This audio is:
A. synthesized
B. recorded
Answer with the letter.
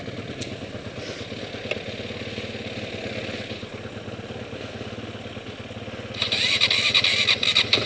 B